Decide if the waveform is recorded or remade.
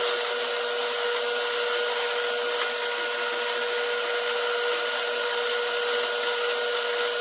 recorded